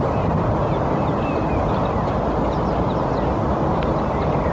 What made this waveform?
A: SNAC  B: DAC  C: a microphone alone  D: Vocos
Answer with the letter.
C